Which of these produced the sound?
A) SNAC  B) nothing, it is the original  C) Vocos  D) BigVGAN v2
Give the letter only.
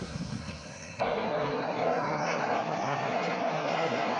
A